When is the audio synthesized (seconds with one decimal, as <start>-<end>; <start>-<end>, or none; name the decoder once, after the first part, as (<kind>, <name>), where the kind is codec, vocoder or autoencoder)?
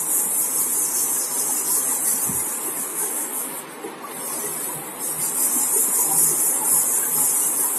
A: 2.9-3.6 (autoencoder, DAC-VAE)